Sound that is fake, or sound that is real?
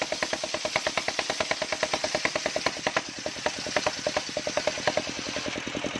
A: real